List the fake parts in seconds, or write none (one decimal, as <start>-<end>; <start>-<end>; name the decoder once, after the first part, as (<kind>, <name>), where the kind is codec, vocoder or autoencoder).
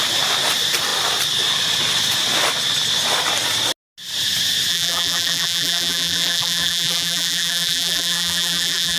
4.7-9.0 (vocoder, BigVGAN v2)